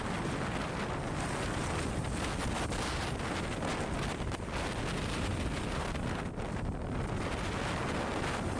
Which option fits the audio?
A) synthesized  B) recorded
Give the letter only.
B